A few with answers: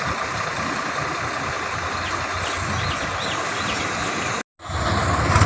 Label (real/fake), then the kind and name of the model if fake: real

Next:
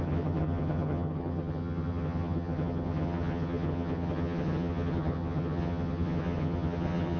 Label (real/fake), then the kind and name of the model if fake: fake, vocoder, HiFi-GAN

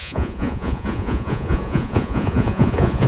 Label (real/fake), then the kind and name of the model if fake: fake, vocoder, Vocos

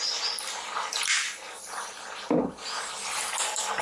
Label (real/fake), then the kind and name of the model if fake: real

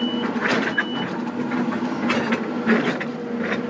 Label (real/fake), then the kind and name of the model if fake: real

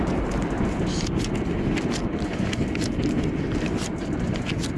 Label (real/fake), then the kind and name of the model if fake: real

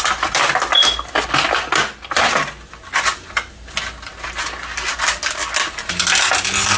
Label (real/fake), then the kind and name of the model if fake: real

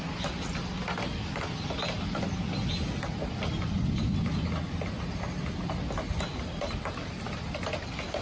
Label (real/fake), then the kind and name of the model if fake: real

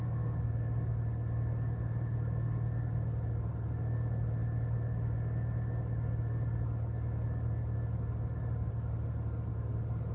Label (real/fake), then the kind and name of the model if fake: real